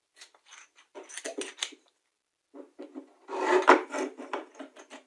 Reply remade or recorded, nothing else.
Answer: recorded